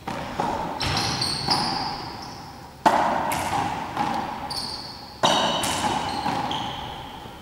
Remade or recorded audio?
recorded